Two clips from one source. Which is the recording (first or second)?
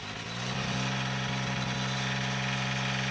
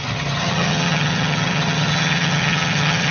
first